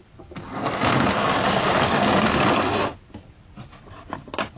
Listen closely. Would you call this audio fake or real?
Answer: real